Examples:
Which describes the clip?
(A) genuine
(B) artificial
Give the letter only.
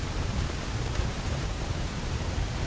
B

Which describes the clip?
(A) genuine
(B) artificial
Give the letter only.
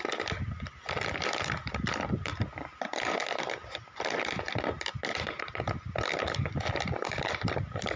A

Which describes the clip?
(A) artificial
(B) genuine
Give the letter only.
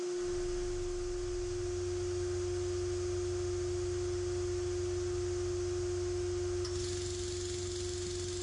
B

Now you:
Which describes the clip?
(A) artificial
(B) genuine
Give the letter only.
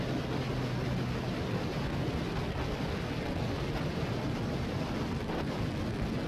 B